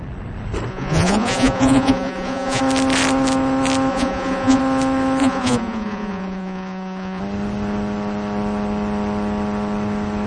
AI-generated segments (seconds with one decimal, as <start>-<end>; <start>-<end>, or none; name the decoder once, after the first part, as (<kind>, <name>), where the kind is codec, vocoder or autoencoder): 0.7-2.6 (vocoder, Vocos); 3.9-4.6; 5.2-7.2